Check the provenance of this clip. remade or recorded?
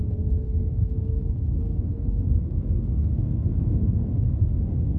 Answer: remade